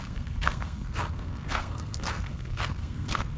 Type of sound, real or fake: fake